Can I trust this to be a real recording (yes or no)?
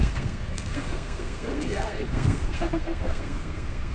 no